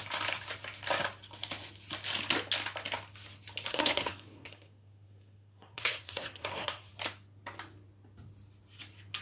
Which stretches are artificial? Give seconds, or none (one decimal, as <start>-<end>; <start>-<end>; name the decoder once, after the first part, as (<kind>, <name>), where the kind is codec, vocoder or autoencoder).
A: 3.7-6.9 (codec, SNAC)